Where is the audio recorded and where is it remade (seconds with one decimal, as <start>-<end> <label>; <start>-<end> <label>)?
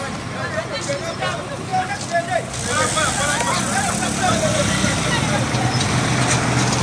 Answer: 0.0-6.8 recorded